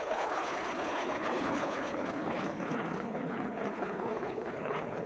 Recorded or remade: remade